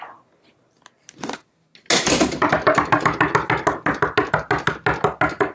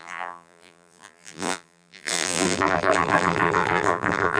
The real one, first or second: first